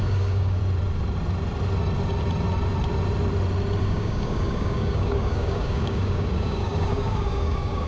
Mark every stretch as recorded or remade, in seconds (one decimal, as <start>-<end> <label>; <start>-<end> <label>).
0.0-0.6 remade; 0.6-3.8 recorded; 3.8-7.9 remade